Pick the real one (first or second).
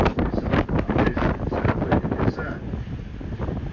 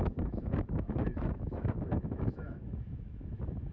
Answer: first